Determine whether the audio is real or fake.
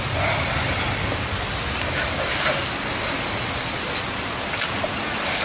real